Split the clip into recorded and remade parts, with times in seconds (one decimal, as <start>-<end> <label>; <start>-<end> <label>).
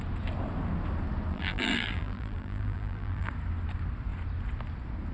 0.0-1.3 recorded; 1.3-3.3 remade; 3.3-5.1 recorded